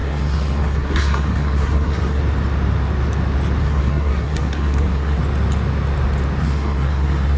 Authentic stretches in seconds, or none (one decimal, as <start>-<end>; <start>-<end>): 2.2-3.6; 5.2-6.4